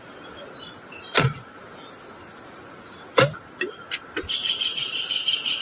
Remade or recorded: recorded